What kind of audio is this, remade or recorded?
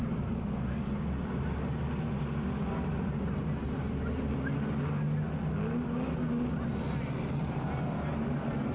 recorded